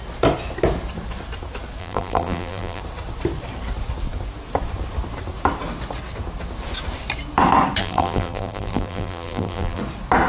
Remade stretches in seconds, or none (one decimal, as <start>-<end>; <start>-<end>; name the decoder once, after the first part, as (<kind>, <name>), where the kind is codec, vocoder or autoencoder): 1.8-2.8 (vocoder, BigVGAN v2); 7.8-9.8